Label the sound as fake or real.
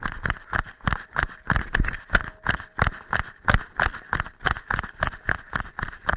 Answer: real